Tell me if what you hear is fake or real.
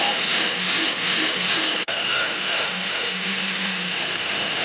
fake